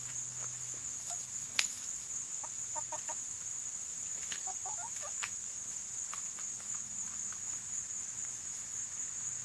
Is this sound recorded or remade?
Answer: remade